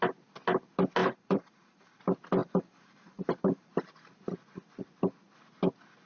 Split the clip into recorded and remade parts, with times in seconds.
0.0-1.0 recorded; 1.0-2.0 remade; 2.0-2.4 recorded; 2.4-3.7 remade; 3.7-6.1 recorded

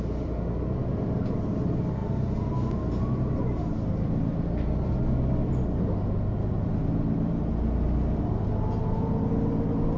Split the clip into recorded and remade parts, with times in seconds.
0.0-2.0 recorded; 2.0-3.4 remade; 3.4-10.0 recorded